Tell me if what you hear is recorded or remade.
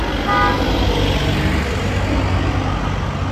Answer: recorded